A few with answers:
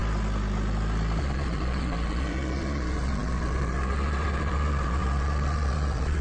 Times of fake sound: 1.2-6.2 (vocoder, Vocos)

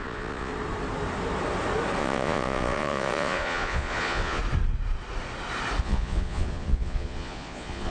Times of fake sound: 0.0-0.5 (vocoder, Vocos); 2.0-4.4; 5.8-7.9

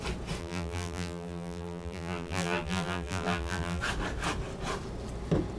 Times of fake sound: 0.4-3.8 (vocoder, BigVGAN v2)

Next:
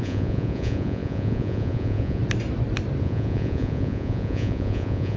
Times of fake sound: 0.0-2.2 (vocoder, Vocos); 3.0-5.2

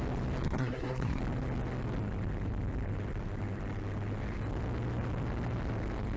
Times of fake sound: 0.4-1.2 (codec, SNAC)

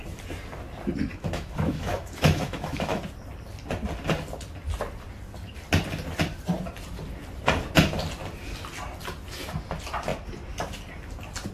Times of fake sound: 1.1-3.0 (autoencoder, DAC-VAE)